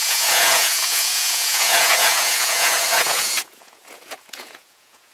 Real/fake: fake